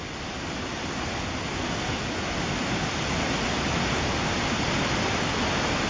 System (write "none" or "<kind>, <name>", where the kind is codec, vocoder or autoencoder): none